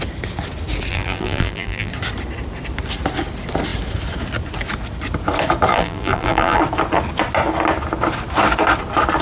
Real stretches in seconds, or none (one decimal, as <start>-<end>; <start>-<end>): 0.0-0.9; 1.9-5.7; 6.6-9.2